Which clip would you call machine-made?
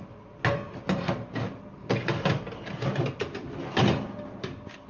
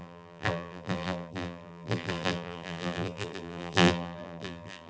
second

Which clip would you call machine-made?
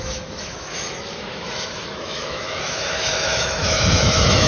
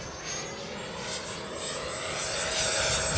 first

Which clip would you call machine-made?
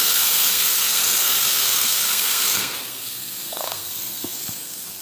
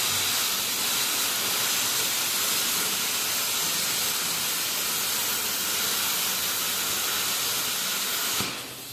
first